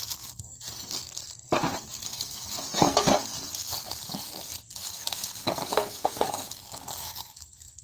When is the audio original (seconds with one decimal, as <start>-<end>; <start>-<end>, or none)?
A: none